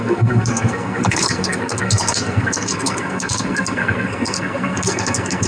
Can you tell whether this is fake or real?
fake